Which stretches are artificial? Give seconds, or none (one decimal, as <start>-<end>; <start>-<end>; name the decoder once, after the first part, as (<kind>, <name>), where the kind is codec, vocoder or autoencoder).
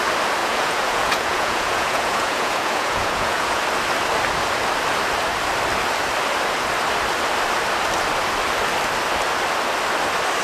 0.4-3.6 (vocoder, Vocos)